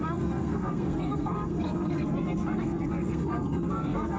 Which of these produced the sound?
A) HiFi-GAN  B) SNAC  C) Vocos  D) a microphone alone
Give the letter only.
B